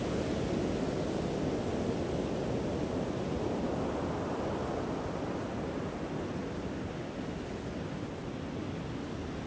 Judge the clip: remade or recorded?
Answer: recorded